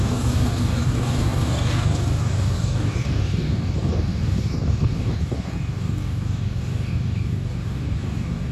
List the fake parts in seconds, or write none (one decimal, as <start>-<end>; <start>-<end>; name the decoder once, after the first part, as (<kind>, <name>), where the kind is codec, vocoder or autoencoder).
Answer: 0.0-8.5 (codec, DAC)